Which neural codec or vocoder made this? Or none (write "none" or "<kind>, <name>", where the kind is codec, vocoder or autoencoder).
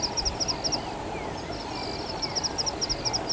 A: none